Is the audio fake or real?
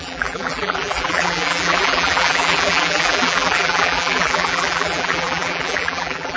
fake